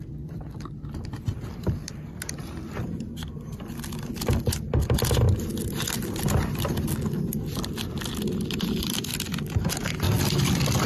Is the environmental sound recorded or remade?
recorded